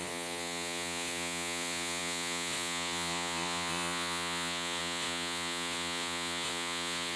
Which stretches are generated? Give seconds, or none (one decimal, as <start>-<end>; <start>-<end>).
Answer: 0.0-7.2